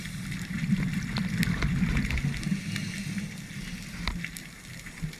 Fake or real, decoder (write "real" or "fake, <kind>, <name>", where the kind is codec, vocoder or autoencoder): real